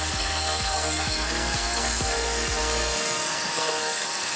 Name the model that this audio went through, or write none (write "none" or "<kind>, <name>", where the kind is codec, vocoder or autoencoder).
codec, SNAC